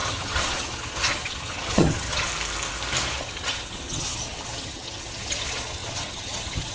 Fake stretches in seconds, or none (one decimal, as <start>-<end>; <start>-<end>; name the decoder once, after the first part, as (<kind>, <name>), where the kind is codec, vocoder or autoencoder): 0.0-2.3 (vocoder, HiFi-GAN); 3.2-6.7